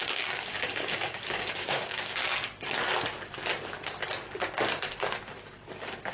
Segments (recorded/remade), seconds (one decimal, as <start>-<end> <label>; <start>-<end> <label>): 0.0-2.2 remade; 2.2-6.1 recorded